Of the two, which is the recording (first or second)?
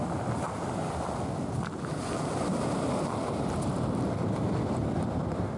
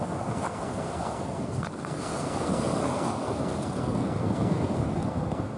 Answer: first